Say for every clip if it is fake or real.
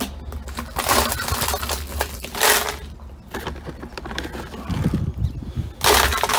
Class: real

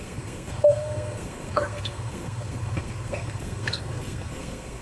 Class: fake